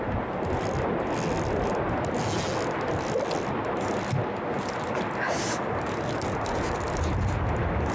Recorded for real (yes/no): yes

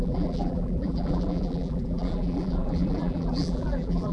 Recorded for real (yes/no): no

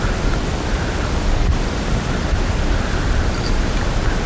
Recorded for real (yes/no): yes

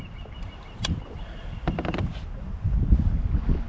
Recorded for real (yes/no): yes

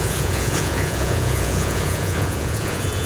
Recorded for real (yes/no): no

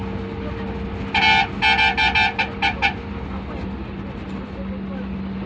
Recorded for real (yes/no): yes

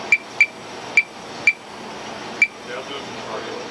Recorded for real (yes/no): yes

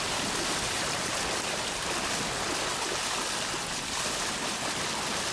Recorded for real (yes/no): yes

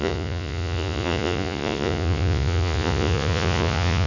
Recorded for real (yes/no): no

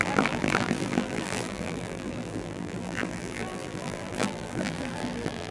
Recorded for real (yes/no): no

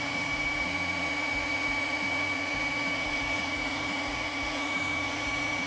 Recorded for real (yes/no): no